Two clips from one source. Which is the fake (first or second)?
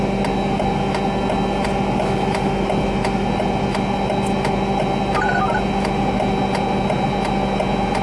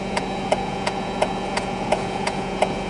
second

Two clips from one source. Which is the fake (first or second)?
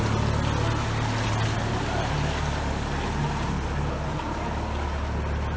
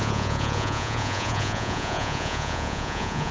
second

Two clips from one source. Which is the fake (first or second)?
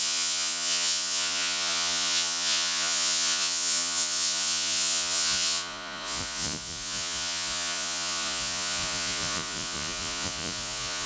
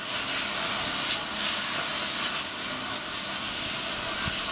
first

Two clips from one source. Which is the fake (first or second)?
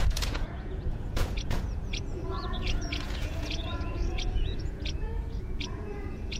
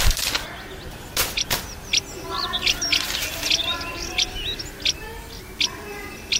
first